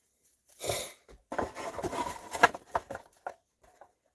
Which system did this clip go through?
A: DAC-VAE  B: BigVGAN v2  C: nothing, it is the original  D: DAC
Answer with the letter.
B